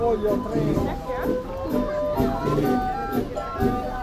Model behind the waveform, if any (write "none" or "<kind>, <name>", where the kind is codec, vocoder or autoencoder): none